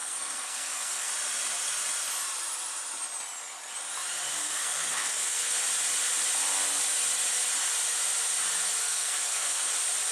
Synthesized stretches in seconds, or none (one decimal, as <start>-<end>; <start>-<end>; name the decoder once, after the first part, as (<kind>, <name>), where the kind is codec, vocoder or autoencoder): 0.0-1.1 (codec, SNAC); 4.4-5.5; 8.8-9.7